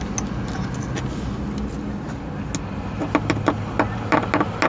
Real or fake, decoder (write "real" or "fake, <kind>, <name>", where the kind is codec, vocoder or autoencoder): real